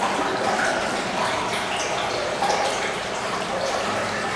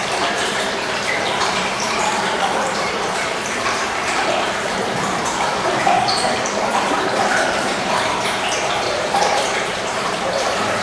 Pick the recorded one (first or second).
first